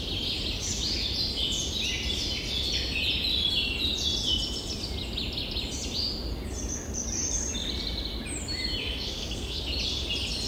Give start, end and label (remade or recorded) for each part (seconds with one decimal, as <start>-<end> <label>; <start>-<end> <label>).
0.0-8.8 recorded; 8.8-9.6 remade; 9.6-10.5 recorded